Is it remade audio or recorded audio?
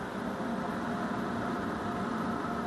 recorded